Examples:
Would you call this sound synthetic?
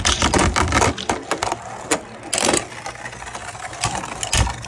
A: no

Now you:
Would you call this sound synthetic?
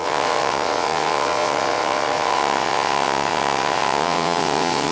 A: yes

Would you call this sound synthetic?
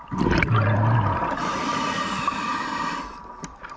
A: no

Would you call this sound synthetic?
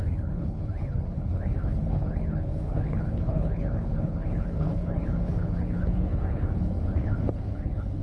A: yes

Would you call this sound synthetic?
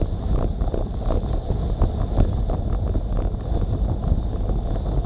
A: no